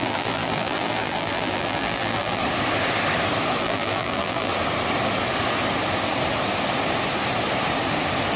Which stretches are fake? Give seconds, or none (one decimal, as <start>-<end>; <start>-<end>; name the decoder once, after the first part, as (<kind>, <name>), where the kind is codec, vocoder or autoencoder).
0.0-2.4 (vocoder, BigVGAN v2); 3.6-4.5

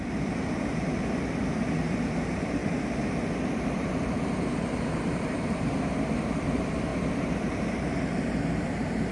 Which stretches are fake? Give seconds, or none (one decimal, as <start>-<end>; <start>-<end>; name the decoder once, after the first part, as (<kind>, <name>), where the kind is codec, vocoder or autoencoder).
0.0-6.9 (vocoder, BigVGAN v2); 7.6-9.1

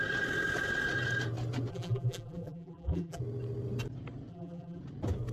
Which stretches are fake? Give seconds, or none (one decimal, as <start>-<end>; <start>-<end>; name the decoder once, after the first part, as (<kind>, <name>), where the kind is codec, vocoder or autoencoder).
1.7-3.2 (vocoder, BigVGAN v2); 4.3-4.8

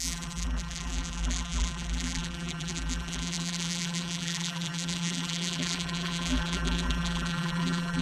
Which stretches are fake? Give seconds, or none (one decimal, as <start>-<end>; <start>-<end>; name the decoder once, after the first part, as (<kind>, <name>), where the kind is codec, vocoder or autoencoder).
0.0-8.0 (vocoder, BigVGAN v2)

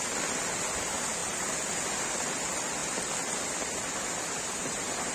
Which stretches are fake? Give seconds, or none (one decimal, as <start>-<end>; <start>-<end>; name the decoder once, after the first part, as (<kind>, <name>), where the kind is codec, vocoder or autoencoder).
none

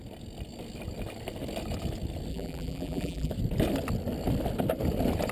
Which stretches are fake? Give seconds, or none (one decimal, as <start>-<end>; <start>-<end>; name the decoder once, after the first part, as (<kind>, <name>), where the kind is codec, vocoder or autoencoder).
2.3-3.3 (vocoder, BigVGAN v2)